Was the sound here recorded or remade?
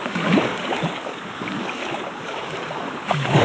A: remade